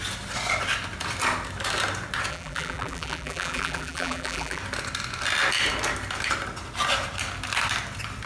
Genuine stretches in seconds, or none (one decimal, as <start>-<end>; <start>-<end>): 0.0-2.3; 4.6-8.3